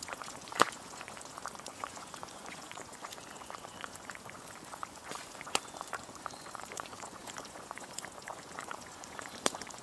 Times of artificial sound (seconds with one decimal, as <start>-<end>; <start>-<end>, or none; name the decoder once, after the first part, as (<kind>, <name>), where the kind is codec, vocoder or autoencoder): 0.0-9.8 (vocoder, Vocos)